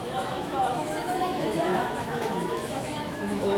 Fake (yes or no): yes